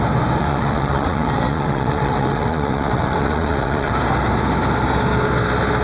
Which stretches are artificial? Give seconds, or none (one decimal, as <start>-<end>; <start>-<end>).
0.4-3.9